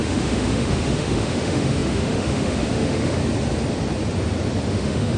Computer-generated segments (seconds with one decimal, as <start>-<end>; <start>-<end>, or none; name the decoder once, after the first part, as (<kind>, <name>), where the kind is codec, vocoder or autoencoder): 0.0-3.2 (autoencoder, DAC-VAE); 4.7-5.2